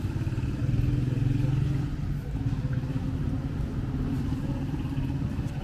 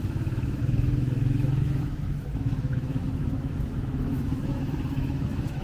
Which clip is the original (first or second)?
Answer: first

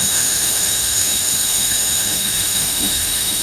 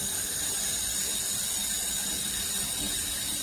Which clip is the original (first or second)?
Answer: second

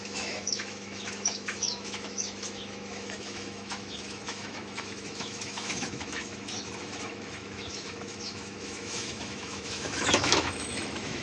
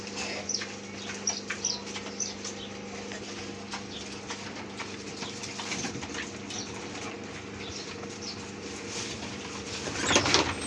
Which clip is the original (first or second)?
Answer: second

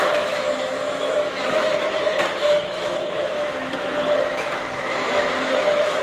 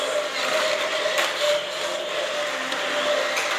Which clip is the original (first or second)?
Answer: second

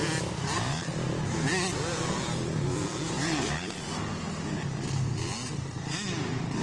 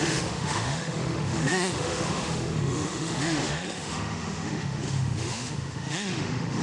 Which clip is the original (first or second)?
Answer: first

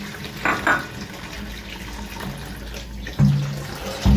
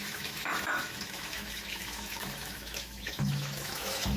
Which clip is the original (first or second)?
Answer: first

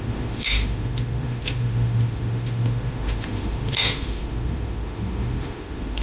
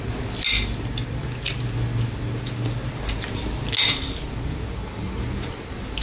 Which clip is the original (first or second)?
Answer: second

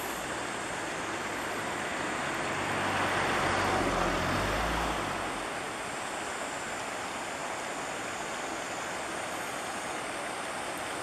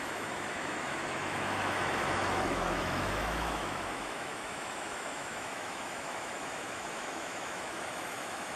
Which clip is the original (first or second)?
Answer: first